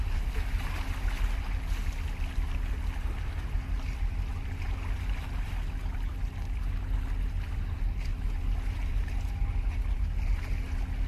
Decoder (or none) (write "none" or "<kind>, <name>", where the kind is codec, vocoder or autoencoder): none